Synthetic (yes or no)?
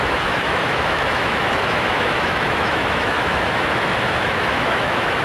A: yes